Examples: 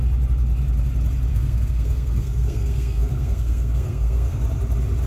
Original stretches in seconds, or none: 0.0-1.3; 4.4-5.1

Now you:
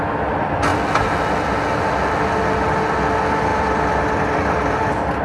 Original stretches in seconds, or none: 0.0-3.5

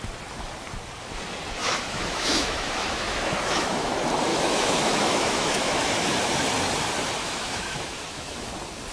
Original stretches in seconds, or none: 0.0-1.6; 3.9-4.3; 5.9-7.2; 8.5-8.9

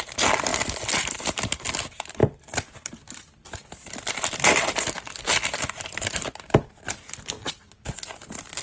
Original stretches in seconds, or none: 0.0-2.2; 6.3-8.6

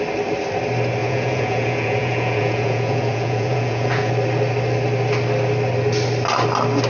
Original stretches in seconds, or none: 0.0-1.0; 4.1-6.9

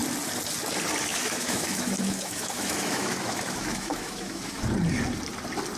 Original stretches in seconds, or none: 0.0-1.1; 4.6-5.8

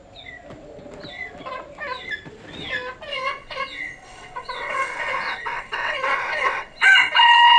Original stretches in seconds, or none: 0.0-3.1